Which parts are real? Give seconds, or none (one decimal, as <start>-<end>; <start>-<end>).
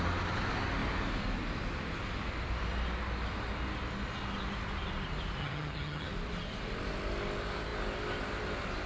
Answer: 0.0-5.4; 6.1-8.9